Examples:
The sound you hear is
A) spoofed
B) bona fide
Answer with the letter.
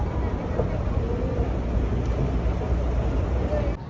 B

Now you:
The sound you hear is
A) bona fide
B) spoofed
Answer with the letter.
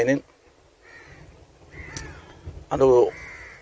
A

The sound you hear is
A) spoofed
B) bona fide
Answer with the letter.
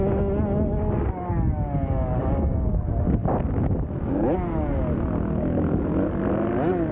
B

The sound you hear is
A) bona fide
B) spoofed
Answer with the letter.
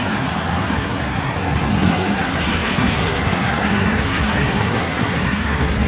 B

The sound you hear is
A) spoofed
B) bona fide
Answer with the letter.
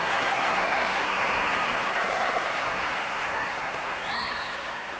A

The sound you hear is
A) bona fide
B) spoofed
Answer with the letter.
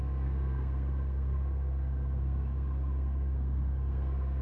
B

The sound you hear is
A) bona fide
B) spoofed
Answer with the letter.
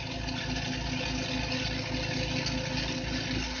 A